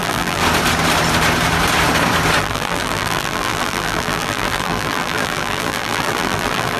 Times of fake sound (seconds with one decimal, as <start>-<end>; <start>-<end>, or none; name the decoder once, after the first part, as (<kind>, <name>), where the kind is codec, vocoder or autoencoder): 0.0-0.4 (vocoder, BigVGAN v2); 2.4-6.8